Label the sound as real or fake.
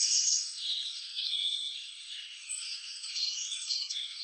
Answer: fake